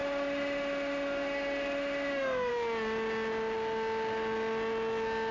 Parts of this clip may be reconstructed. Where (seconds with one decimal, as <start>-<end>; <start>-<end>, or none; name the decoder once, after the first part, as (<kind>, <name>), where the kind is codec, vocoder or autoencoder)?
0.0-2.5 (autoencoder, DAC-VAE)